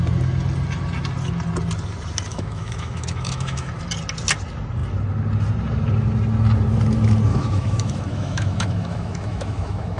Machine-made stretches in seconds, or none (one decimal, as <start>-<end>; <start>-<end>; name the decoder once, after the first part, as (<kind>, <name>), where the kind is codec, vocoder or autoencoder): 2.3-3.7 (autoencoder, DAC-VAE); 7.3-10.0